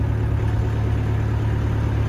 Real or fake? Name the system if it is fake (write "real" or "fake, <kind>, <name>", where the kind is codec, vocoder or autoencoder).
real